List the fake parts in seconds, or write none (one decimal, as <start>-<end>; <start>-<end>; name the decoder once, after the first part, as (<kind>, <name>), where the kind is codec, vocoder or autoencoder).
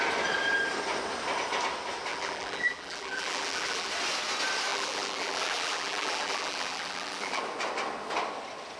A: 2.1-3.9 (vocoder, BigVGAN v2); 4.7-7.4